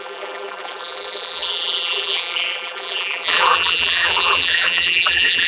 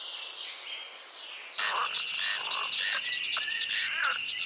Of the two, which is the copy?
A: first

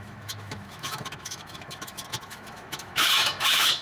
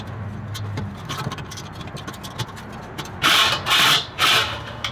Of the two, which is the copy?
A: first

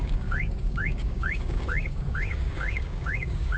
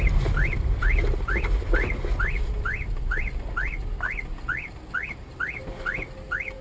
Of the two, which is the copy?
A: first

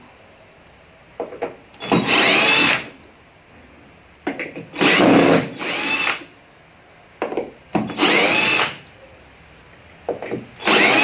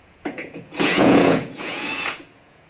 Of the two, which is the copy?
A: second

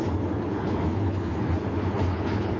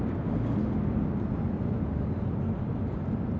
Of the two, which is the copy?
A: first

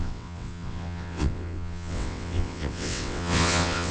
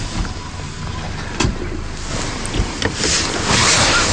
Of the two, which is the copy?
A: first